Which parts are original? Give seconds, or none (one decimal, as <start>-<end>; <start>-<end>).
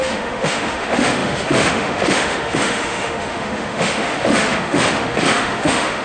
none